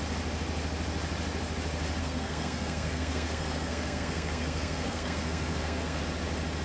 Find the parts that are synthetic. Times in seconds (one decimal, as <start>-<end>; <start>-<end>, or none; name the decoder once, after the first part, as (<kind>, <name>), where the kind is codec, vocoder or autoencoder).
2.0-6.0 (codec, SNAC)